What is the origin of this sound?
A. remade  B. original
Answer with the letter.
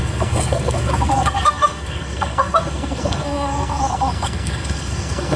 A